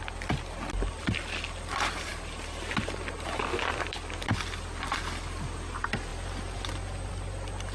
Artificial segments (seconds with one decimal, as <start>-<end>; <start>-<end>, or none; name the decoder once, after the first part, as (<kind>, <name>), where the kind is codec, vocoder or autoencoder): none